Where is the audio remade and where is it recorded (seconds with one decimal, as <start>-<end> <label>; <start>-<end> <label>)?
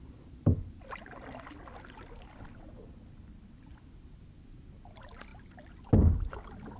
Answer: 0.0-6.8 recorded